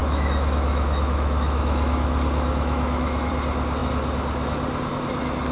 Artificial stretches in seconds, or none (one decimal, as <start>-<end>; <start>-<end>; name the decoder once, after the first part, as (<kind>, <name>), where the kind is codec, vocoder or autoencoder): 0.0-3.3 (autoencoder, DAC-VAE)